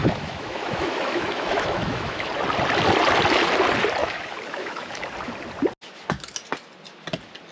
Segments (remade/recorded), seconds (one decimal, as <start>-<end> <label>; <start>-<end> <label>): 0.0-2.3 remade; 2.3-4.0 recorded; 4.0-5.0 remade; 5.0-7.5 recorded

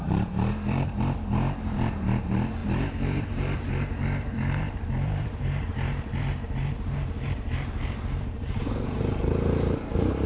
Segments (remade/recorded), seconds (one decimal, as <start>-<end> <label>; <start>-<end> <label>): 0.0-10.3 remade

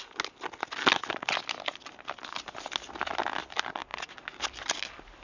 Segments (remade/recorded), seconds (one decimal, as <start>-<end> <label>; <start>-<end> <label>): 0.0-3.9 recorded; 3.9-4.4 remade; 4.4-5.2 recorded